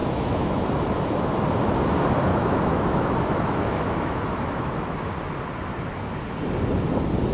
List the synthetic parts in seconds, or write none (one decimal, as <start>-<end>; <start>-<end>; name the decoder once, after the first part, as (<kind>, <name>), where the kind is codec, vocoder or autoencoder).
0.0-0.6 (autoencoder, DAC-VAE); 2.3-5.1